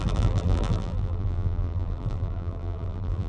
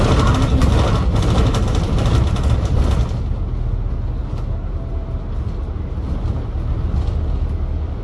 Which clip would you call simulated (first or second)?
first